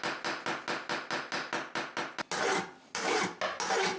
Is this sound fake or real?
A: real